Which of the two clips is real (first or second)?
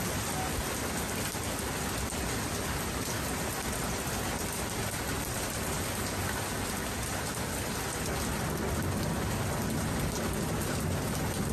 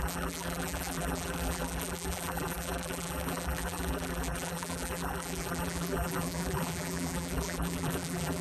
first